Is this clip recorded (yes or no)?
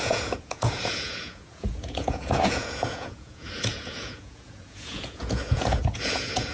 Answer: no